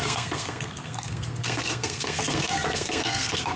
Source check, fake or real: fake